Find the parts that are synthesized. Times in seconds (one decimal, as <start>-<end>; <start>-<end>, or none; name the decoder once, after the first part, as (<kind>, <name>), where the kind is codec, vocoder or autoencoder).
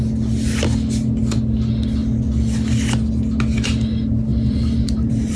4.3-5.4 (vocoder, BigVGAN v2)